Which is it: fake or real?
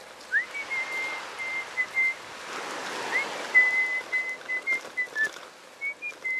real